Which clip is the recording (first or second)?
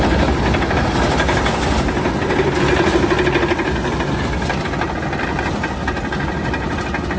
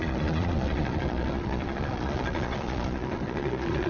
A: first